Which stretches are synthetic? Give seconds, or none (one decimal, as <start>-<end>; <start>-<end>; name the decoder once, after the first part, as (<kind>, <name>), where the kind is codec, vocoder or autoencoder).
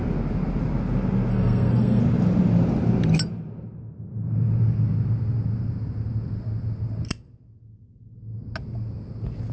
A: 1.3-2.0 (codec, SNAC)